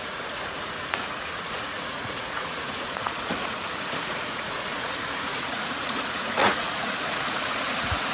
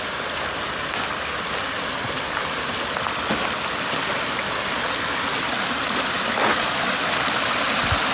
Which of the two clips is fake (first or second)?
first